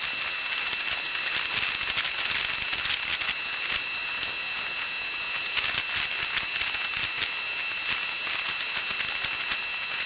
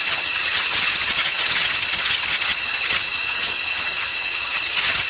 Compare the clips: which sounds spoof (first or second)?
second